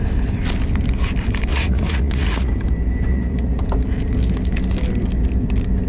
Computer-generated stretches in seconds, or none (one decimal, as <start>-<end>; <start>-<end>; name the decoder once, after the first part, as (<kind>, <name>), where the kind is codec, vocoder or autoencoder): 1.5-2.5 (vocoder, Vocos); 3.1-3.6

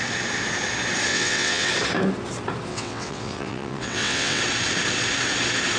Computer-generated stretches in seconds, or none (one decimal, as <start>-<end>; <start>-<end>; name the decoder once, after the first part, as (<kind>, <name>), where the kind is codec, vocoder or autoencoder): 1.1-1.7 (vocoder, WaveNeXt); 2.7-4.4

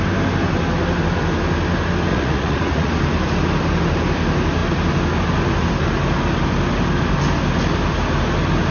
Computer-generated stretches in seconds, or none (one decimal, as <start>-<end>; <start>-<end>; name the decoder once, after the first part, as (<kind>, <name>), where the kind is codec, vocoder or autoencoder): 2.1-2.9 (vocoder, Vocos)

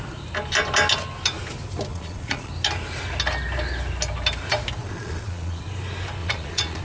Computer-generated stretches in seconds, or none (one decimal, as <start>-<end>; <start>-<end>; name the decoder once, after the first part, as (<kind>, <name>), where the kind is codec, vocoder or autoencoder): 1.9-2.5 (vocoder, Vocos); 4.8-5.6; 6.2-6.8

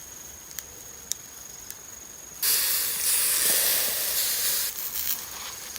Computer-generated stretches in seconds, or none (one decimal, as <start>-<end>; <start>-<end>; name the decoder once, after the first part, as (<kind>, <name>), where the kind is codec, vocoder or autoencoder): 3.7-4.7 (vocoder, BigVGAN v2)

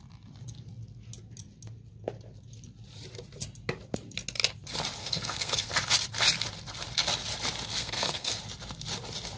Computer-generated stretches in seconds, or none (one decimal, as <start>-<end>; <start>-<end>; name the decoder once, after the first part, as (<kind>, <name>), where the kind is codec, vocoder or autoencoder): 5.0-5.7 (codec, SNAC); 7.7-8.4